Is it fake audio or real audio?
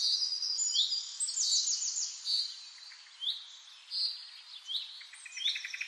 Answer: real